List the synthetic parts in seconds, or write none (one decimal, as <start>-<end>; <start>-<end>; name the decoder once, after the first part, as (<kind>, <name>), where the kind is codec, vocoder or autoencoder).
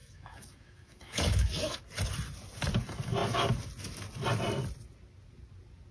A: 0.0-1.8 (autoencoder, DAC-VAE)